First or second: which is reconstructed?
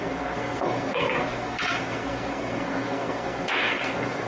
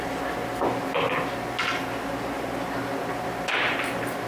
first